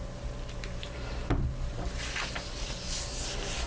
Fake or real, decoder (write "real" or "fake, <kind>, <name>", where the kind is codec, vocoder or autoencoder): real